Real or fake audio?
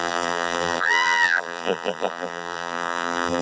fake